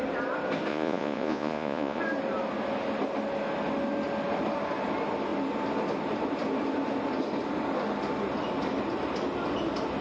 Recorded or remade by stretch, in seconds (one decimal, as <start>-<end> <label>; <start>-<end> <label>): 0.0-0.7 recorded; 0.7-2.0 remade; 2.0-10.0 recorded